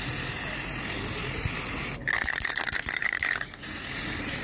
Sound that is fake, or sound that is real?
real